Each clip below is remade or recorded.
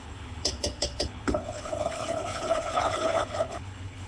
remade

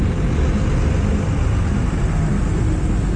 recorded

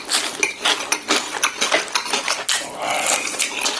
recorded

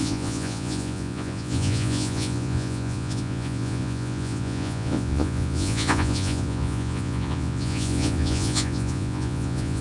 remade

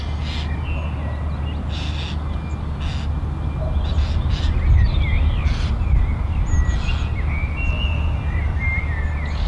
recorded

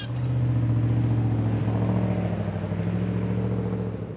recorded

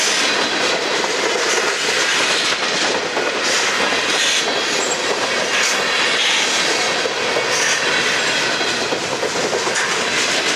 recorded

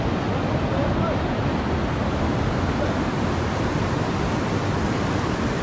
recorded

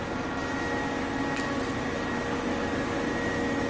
recorded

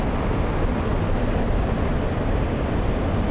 recorded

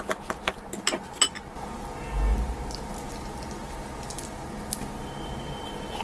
recorded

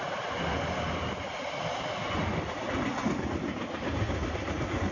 recorded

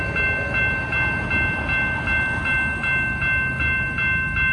recorded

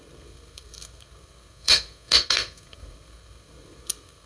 remade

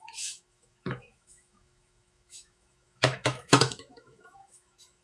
remade